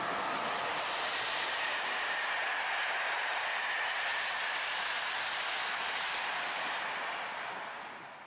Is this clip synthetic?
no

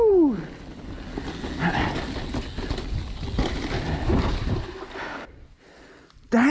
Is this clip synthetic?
no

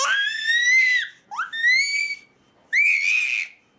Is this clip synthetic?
no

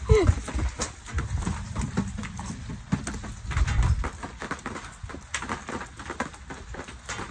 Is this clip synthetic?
no